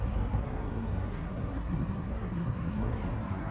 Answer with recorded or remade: remade